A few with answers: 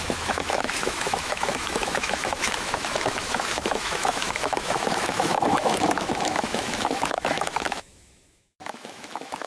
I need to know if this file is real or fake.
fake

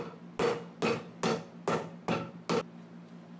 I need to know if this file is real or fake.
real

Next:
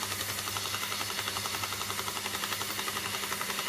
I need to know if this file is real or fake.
real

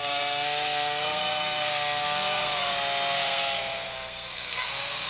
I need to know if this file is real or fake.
fake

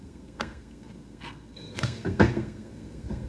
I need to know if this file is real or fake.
fake